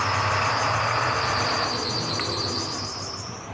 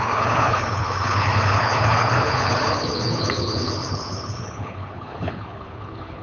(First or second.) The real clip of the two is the first